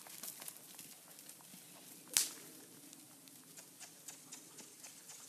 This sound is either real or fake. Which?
real